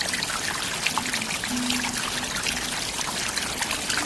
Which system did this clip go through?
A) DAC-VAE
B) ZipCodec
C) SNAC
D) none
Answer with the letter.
D